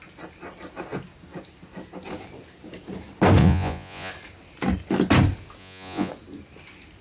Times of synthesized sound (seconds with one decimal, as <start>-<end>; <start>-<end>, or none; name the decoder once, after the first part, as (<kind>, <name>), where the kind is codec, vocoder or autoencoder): 3.4-4.1 (vocoder, Vocos); 5.6-6.1